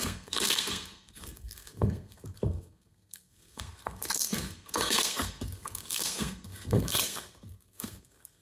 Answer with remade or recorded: remade